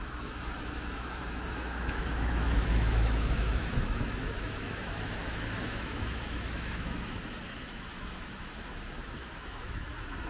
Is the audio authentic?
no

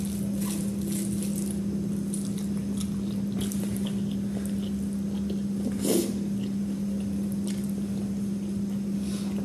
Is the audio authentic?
yes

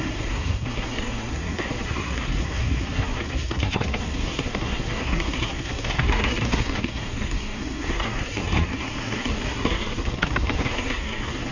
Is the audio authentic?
no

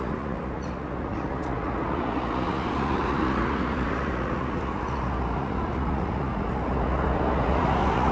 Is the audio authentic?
no